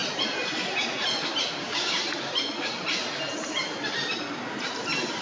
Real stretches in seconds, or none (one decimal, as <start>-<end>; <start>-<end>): 0.0-1.6; 2.0-5.2